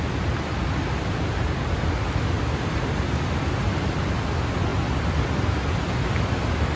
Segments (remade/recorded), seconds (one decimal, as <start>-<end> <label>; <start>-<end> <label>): 0.0-6.8 recorded